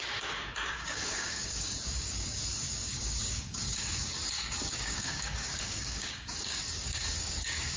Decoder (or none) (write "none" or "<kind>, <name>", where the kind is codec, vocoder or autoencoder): codec, DAC